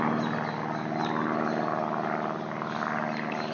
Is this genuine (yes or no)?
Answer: yes